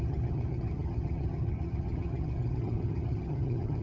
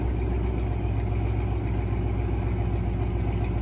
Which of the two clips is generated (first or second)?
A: first